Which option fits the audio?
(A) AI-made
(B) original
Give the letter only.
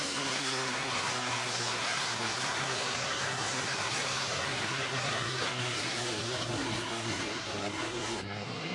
A